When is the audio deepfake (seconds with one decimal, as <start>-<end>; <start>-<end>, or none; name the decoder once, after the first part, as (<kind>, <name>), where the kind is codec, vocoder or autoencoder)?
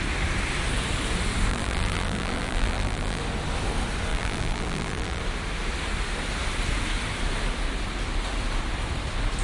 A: 1.5-3.2 (vocoder, BigVGAN v2); 4.1-5.2